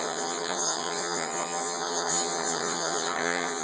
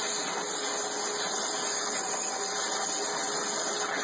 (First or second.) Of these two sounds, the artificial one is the first